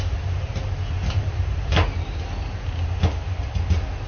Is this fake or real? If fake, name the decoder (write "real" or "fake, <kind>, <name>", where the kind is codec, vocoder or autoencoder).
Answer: real